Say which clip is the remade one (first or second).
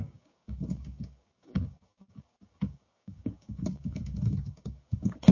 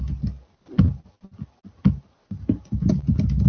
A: first